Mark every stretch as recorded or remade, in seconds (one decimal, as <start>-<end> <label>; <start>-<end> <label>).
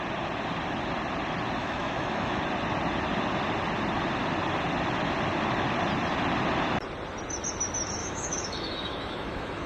0.0-1.6 recorded; 1.6-2.4 remade; 2.4-8.0 recorded; 8.0-9.7 remade